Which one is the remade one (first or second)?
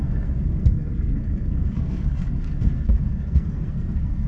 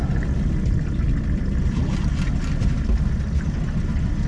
first